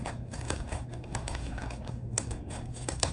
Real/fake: fake